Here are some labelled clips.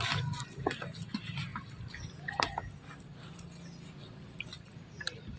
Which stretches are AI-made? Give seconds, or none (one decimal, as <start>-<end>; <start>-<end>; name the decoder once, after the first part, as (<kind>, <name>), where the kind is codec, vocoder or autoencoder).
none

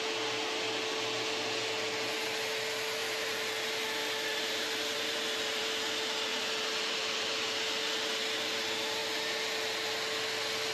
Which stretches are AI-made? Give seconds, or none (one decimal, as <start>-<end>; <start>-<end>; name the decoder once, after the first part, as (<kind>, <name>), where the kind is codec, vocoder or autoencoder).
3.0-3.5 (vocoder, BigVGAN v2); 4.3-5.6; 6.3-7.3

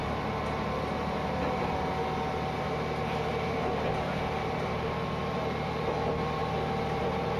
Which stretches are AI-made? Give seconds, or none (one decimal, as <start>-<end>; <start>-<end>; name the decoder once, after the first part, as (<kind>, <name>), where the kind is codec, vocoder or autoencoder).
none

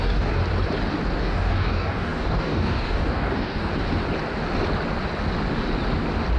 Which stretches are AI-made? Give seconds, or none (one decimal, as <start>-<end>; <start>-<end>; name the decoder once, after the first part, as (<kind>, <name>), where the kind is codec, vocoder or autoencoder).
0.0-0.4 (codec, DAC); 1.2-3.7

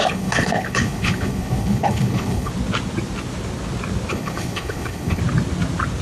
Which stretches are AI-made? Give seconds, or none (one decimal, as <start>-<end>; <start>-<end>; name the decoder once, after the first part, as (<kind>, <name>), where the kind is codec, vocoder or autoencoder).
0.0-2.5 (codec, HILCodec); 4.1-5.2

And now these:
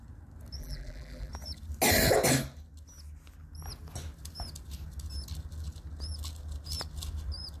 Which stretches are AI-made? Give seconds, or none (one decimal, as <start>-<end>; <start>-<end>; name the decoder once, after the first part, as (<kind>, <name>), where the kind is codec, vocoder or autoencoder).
0.6-1.3 (vocoder, BigVGAN v2)